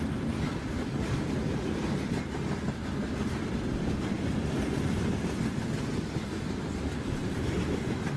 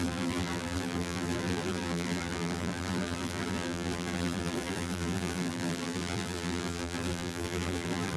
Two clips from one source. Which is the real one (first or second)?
first